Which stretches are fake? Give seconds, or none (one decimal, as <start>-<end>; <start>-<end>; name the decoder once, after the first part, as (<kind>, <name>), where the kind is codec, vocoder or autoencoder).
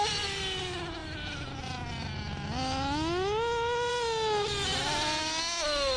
none